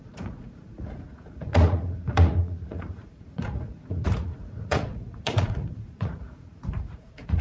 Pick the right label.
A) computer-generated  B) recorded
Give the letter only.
A